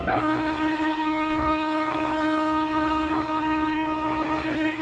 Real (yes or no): no